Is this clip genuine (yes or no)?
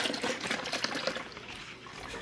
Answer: yes